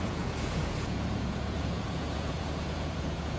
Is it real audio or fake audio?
fake